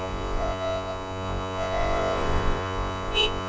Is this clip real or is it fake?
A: fake